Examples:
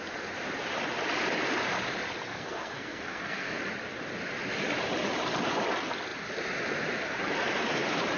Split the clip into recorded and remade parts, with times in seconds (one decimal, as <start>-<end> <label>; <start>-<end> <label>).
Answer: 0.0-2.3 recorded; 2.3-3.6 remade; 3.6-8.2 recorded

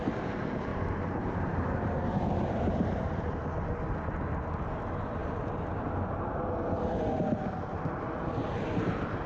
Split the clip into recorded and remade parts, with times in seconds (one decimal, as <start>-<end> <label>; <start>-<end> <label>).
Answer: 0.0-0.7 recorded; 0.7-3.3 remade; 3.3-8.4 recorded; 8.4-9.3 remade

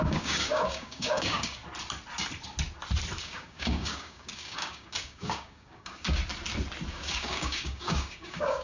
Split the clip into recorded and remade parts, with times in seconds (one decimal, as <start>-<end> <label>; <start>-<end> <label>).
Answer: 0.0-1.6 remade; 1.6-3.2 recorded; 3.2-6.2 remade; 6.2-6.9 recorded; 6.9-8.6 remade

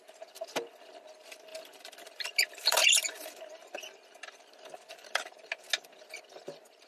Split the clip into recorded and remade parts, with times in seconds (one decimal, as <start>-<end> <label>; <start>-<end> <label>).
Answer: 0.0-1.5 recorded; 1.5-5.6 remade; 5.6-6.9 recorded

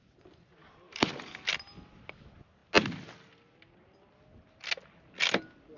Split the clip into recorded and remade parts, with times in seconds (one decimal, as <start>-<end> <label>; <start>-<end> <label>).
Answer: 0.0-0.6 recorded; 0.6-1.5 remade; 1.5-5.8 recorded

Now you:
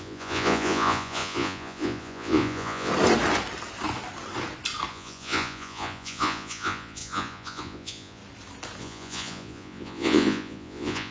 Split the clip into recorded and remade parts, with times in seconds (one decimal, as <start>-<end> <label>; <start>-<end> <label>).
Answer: 0.0-2.9 remade; 2.9-4.9 recorded; 4.9-8.2 remade; 8.2-8.8 recorded; 8.8-11.1 remade